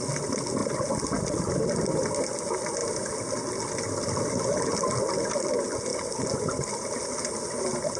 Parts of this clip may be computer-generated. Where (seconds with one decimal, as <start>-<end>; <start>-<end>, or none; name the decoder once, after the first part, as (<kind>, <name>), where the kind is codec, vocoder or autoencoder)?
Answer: none